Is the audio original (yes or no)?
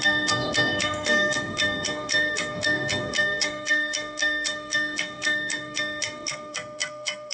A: no